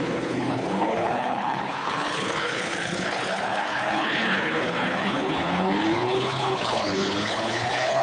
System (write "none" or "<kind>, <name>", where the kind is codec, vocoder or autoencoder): codec, HILCodec